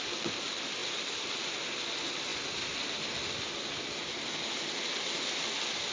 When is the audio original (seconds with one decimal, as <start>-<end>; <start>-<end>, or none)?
0.0-5.9